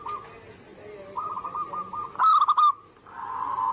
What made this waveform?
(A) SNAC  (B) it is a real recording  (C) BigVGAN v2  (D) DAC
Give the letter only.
B